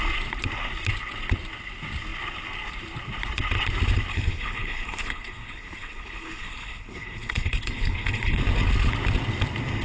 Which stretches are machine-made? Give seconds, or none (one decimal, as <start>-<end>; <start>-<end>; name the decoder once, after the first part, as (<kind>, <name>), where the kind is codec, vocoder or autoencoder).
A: 4.1-8.4 (codec, HILCodec)